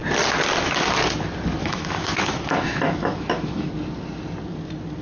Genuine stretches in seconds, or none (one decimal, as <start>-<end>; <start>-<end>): 0.0-1.6; 3.7-5.0